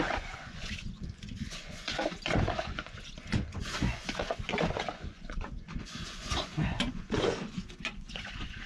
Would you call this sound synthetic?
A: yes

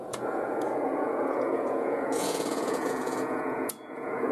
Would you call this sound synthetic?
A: yes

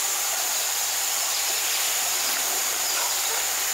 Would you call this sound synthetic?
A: no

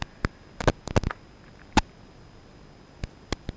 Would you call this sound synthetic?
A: no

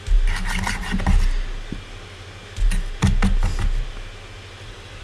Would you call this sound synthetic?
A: no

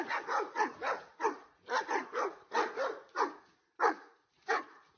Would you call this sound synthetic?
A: yes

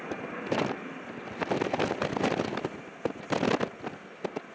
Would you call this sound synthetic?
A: no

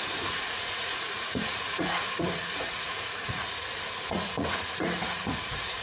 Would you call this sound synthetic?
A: yes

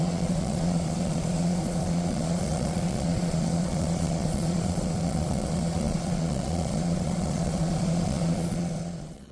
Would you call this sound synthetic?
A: yes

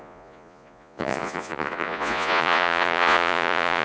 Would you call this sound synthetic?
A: yes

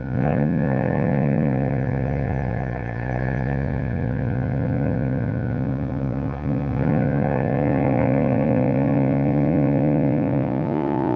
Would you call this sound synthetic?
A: yes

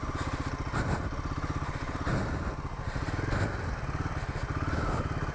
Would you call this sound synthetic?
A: no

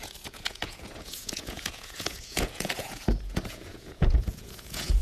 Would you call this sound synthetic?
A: yes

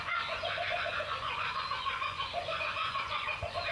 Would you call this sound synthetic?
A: yes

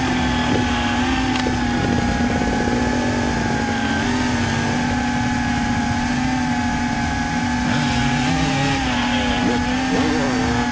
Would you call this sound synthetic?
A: no